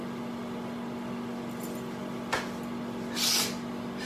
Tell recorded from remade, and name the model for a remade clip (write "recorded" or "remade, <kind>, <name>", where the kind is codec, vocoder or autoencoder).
recorded